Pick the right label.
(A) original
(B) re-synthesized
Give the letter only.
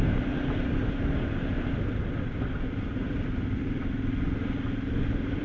A